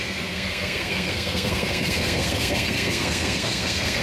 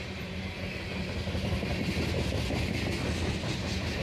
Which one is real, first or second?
second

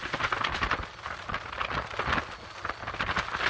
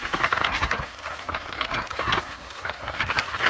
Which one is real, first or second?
first